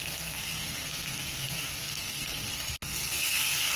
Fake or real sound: fake